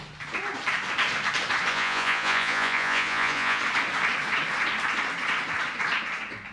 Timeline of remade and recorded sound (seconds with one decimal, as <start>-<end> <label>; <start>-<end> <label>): 0.0-1.7 recorded; 1.7-3.6 remade; 3.6-6.5 recorded